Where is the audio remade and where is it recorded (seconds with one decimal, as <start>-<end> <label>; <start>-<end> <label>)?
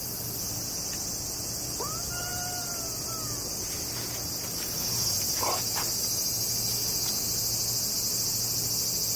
0.0-9.2 recorded